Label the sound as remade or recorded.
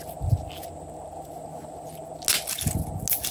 recorded